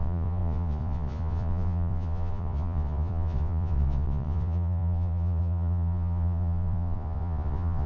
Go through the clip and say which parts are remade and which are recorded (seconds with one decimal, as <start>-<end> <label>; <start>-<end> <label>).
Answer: 0.0-7.9 remade